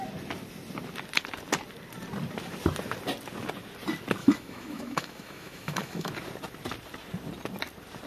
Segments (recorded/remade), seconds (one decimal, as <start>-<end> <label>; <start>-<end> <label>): 0.0-4.2 recorded; 4.2-6.1 remade; 6.1-8.1 recorded